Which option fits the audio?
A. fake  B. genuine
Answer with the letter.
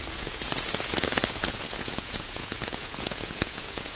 A